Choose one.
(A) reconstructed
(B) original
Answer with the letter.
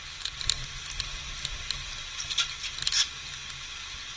B